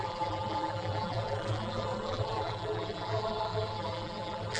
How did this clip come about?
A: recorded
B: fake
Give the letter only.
B